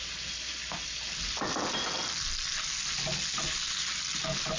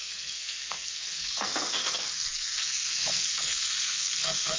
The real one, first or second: first